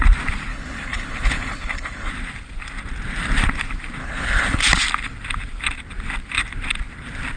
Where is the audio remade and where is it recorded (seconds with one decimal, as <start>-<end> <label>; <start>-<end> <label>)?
0.0-0.5 recorded; 0.5-2.1 remade; 2.1-4.0 recorded; 4.0-4.6 remade; 4.6-7.4 recorded